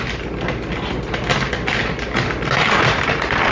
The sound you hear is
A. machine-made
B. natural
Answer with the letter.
B